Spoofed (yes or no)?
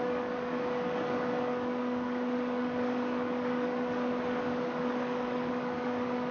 yes